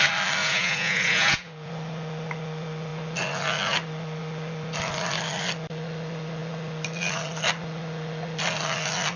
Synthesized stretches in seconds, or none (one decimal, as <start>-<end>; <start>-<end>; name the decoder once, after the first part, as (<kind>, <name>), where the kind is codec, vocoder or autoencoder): 0.4-1.7 (vocoder, Vocos)